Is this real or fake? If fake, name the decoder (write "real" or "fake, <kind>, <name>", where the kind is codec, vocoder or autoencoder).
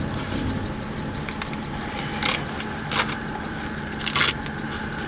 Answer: real